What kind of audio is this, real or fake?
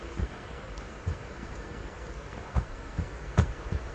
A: fake